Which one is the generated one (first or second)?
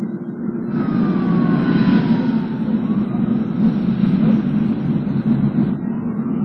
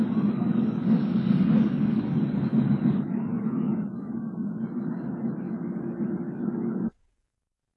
second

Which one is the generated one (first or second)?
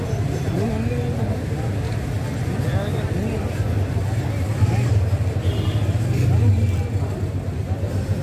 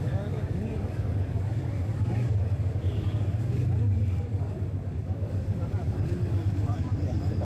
second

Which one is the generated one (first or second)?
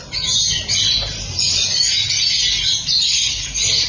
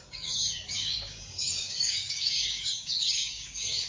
second